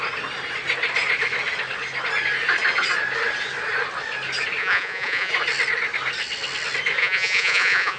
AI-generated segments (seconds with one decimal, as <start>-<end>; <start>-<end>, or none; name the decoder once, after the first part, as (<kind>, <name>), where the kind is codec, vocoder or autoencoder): 4.6-5.3 (vocoder, Vocos); 7.0-8.0